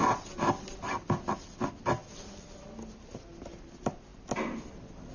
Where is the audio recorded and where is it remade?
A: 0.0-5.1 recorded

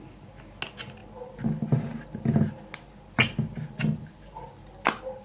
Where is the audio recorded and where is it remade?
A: 0.0-5.2 recorded

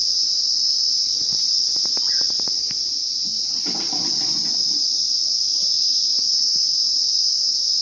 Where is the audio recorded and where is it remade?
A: 0.0-5.9 remade; 5.9-7.0 recorded; 7.0-7.8 remade

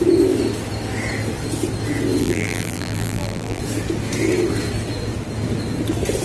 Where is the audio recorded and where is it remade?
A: 0.0-2.2 recorded; 2.2-3.6 remade; 3.6-6.2 recorded

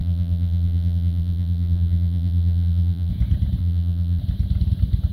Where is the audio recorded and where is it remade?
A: 0.0-3.1 remade; 3.1-3.6 recorded; 3.6-4.2 remade; 4.2-5.1 recorded

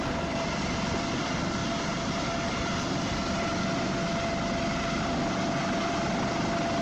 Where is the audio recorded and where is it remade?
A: 0.0-1.6 remade; 1.6-2.5 recorded; 2.5-3.2 remade; 3.2-5.8 recorded; 5.8-6.8 remade